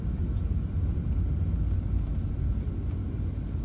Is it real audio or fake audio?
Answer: real